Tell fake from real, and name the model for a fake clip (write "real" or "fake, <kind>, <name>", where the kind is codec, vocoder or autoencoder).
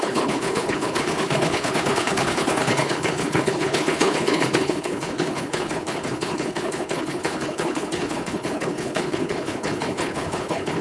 fake, codec, HILCodec